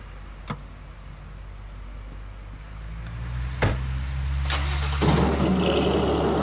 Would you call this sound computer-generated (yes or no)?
no